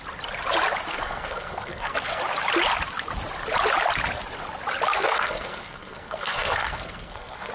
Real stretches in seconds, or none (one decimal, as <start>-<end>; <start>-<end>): 0.0-0.9; 2.2-4.9

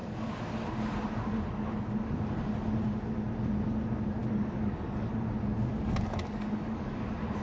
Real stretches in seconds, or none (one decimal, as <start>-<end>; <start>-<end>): 0.0-4.2; 5.1-5.7; 6.9-7.4

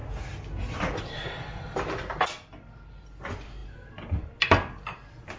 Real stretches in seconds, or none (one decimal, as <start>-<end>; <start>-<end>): 0.0-5.4